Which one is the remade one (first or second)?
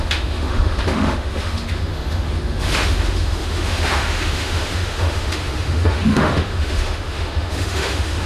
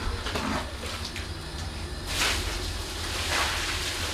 first